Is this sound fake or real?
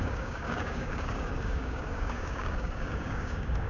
fake